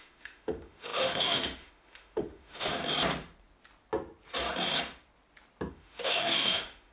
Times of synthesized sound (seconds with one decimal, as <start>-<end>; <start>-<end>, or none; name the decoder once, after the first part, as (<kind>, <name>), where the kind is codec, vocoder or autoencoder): 0.0-2.8 (autoencoder, DAC-VAE); 5.7-6.9

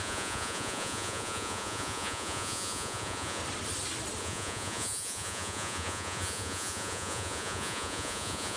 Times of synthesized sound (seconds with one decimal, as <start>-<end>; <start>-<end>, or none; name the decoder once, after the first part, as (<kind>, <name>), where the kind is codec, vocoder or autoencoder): 0.0-3.4 (vocoder, Vocos); 4.2-8.6

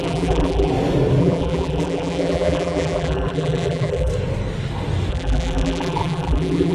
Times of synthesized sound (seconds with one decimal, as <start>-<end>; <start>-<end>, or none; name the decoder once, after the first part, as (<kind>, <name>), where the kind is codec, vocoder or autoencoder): 0.0-0.7 (vocoder, BigVGAN v2); 1.2-4.1; 5.1-6.7

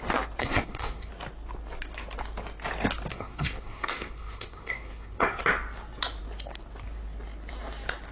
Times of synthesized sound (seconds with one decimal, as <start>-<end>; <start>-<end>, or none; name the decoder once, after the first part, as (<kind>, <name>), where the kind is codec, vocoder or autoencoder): 0.4-1.1 (codec, SNAC); 3.1-5.4

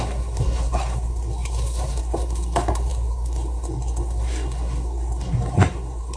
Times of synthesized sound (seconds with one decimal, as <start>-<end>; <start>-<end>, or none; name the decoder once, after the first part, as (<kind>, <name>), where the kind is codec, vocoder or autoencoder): 0.0-6.2 (codec, SNAC)